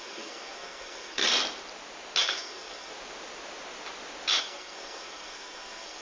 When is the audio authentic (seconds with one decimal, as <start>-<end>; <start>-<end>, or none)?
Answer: 1.2-2.2; 2.9-4.4

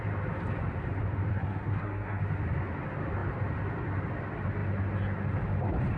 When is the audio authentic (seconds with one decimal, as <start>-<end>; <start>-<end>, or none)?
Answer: 0.0-1.3; 2.2-6.0

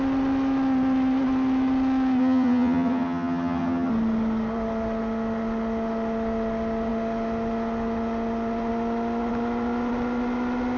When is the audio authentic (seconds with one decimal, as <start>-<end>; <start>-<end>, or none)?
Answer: 0.0-2.2; 3.9-10.8

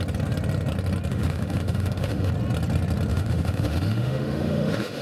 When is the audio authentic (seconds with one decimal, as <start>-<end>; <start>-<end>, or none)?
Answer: 0.0-1.1; 2.3-3.1

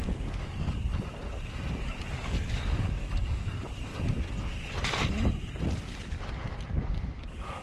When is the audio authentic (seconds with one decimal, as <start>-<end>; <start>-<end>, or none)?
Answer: 0.9-2.1; 3.9-6.7

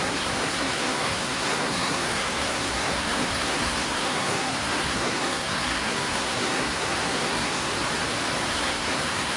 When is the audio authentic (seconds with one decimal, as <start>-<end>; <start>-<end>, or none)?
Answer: 7.7-8.5

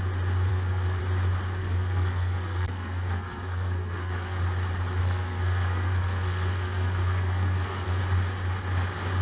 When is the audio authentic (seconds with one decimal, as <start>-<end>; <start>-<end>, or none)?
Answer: 0.0-0.5; 1.0-1.6; 4.4-5.0; 8.0-9.2